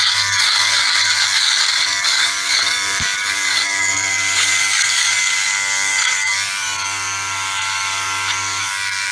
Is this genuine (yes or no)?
no